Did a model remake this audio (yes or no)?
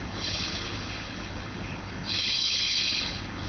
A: yes